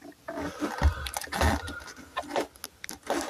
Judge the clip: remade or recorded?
recorded